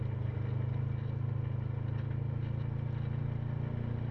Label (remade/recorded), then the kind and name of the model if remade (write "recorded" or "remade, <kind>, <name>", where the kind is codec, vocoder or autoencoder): recorded